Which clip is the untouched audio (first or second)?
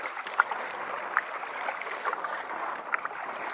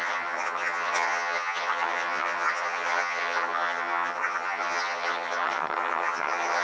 first